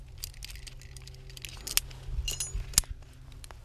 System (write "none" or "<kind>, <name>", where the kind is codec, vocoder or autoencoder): none